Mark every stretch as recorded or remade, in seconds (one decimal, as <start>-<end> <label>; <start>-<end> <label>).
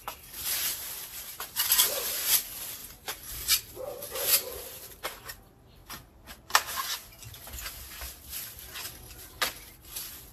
0.0-0.7 recorded; 0.7-1.7 remade; 1.7-2.8 recorded; 2.8-3.6 remade; 3.6-10.3 recorded